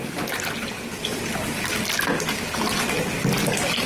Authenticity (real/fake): real